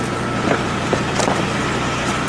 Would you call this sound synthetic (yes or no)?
no